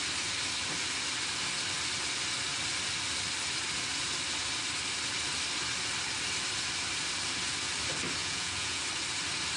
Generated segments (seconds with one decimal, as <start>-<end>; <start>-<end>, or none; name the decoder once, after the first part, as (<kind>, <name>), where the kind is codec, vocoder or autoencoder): 8.2-8.8 (vocoder, Vocos)